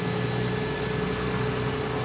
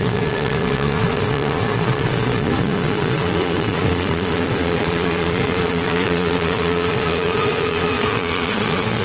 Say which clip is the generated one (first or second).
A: second